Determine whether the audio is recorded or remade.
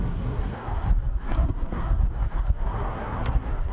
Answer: remade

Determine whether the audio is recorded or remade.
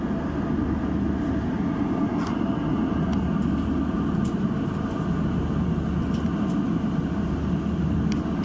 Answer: recorded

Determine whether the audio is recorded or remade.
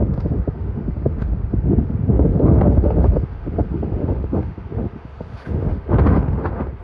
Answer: remade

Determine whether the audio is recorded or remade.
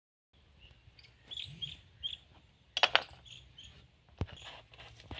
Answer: recorded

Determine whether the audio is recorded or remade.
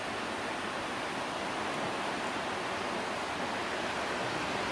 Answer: recorded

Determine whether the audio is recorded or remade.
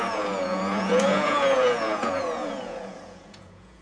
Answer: remade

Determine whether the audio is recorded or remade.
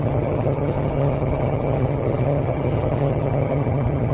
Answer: remade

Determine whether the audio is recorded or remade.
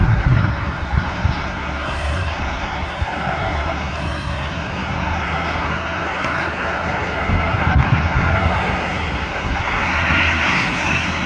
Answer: remade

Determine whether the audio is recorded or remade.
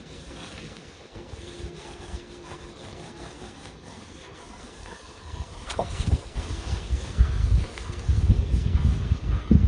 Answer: remade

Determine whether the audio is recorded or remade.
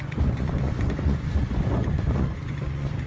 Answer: remade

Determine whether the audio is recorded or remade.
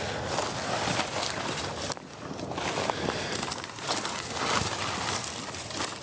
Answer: recorded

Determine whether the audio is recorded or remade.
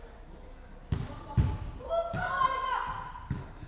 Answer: recorded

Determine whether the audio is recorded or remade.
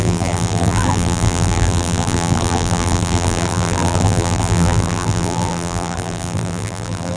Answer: remade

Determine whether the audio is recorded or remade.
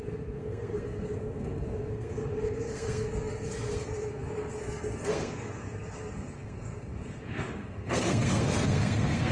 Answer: remade